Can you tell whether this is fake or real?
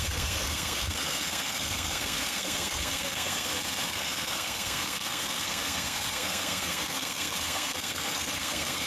fake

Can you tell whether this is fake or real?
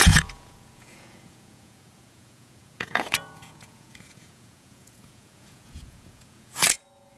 fake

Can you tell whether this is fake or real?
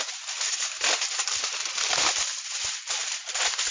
real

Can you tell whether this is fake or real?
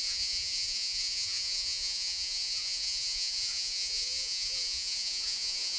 fake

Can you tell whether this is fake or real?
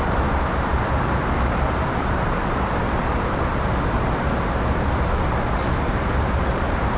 fake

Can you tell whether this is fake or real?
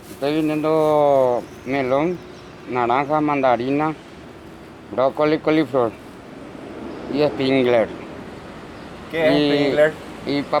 real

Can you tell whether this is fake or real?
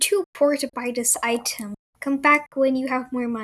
real